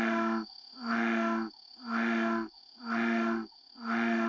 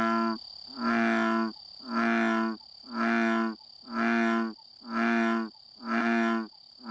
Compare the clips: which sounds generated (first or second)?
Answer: first